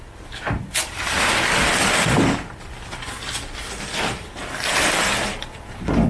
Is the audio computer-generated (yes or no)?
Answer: no